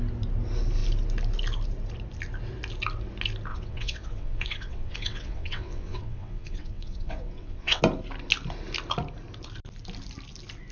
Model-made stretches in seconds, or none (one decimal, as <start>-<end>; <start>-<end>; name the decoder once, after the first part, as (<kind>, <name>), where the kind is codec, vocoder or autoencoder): 3.5-7.8 (vocoder, WaveNeXt)